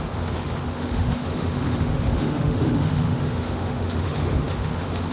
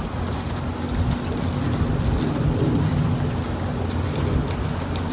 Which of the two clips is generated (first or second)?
first